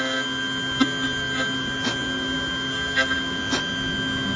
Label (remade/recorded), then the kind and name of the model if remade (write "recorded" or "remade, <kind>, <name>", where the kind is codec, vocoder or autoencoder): recorded